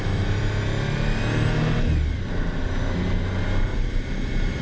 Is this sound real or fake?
real